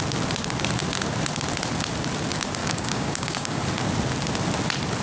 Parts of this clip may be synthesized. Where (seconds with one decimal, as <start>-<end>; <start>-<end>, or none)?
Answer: 2.6-3.6